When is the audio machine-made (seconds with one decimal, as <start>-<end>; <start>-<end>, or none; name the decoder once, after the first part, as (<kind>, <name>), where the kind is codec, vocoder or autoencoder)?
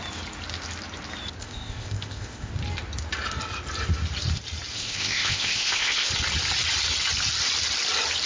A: 1.4-2.5 (codec, ZipCodec); 4.7-6.1